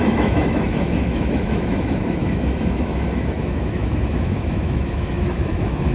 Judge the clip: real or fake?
fake